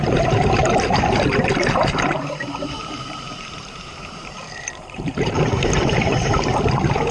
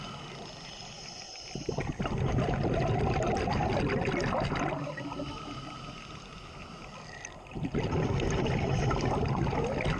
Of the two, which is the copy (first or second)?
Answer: first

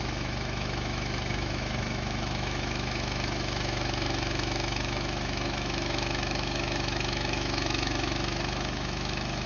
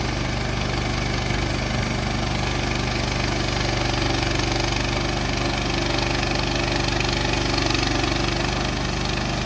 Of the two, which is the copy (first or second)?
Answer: first